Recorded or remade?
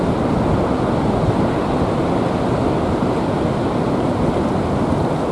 recorded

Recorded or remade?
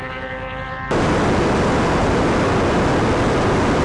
recorded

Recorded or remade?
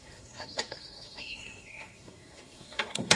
remade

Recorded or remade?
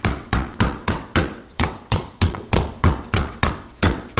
remade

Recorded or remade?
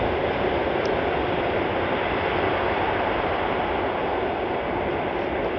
recorded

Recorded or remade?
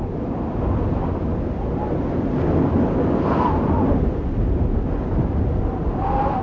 recorded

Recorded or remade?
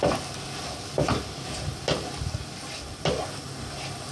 recorded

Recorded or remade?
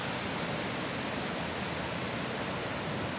recorded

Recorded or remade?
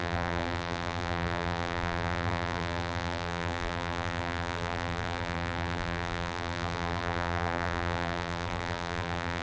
remade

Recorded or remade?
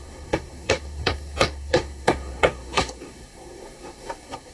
remade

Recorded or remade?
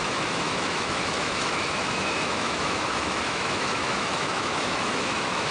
remade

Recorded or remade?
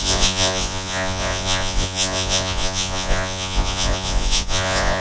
remade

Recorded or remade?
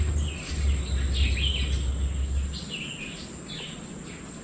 recorded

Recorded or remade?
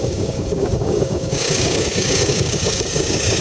remade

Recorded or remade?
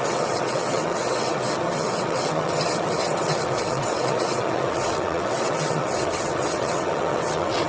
remade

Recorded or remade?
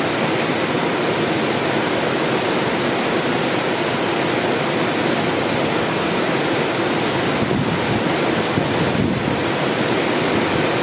recorded